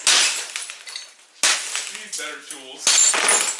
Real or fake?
real